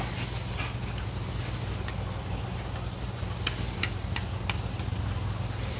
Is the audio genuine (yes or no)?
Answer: yes